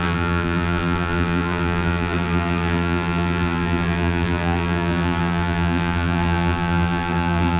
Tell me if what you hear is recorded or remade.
remade